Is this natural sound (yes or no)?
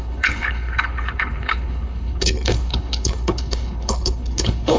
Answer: no